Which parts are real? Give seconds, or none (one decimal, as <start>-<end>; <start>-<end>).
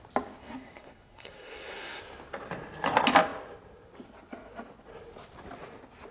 0.0-0.4; 2.0-6.1